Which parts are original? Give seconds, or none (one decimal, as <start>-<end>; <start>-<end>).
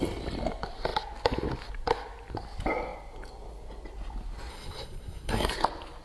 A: 0.0-4.5; 5.5-6.0